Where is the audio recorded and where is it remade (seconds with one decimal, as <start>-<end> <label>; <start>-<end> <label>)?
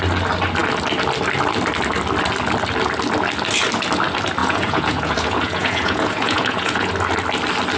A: 0.0-4.4 recorded; 4.4-6.9 remade; 6.9-7.8 recorded